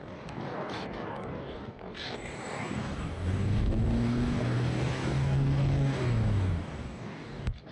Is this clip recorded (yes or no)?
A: no